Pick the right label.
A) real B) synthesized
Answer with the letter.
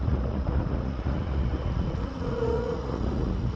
B